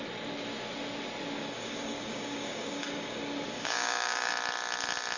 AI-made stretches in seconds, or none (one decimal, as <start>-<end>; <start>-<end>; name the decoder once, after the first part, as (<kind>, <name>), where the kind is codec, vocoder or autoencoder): 1.4-4.3 (codec, DAC)